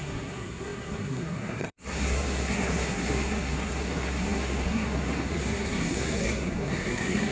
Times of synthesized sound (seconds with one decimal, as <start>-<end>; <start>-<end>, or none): 0.0-7.3